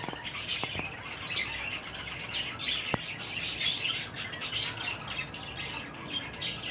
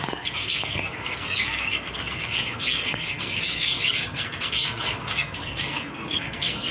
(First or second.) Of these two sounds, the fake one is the second